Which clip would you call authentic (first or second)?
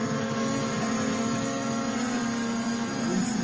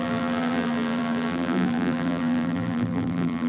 first